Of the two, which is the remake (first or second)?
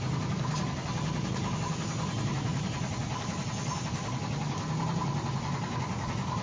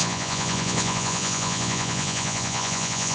second